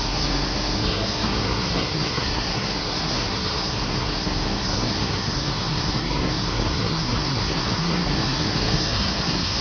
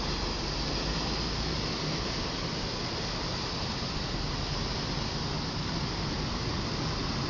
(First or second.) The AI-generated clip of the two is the first